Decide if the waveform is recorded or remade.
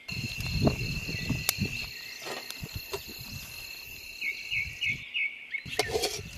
recorded